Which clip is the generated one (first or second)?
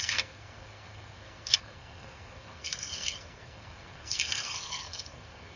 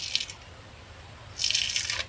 first